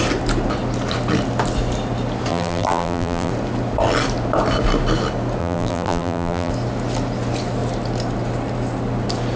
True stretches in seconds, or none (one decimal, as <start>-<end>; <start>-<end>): 0.0-2.3; 3.3-5.4; 6.5-9.4